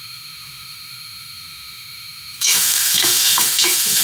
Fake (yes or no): yes